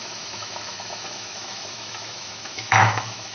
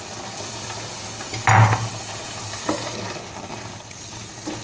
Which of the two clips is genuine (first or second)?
second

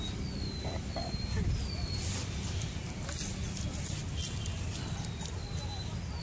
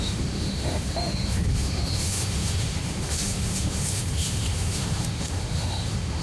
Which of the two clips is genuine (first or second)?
first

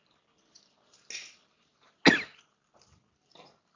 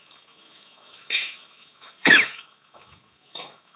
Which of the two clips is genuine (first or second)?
first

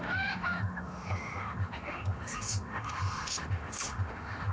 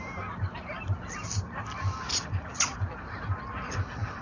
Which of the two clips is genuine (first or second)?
second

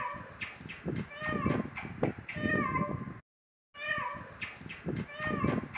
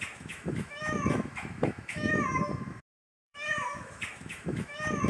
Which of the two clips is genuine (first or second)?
first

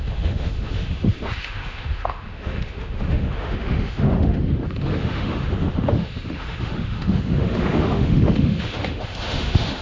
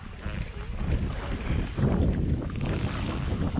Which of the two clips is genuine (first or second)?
second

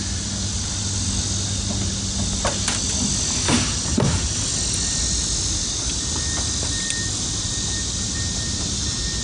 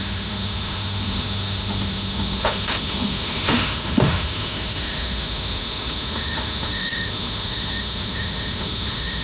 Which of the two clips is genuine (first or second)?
first